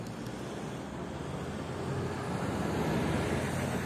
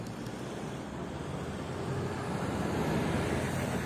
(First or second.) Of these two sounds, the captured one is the first